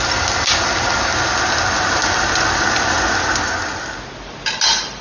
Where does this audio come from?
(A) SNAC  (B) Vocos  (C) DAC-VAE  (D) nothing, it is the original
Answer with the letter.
D